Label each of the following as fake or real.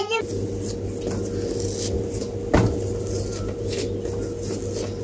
real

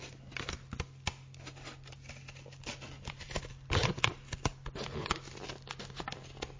real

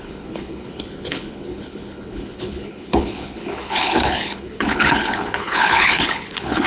fake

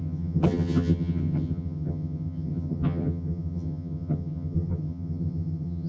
fake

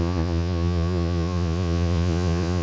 fake